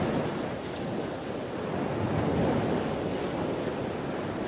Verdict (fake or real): real